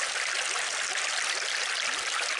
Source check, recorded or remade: recorded